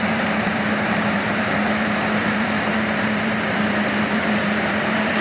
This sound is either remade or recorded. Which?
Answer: remade